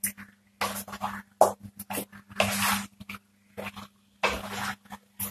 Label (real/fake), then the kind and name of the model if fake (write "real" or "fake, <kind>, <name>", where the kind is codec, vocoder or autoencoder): real